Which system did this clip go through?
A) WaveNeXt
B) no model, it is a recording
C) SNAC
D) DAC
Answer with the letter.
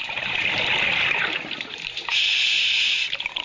B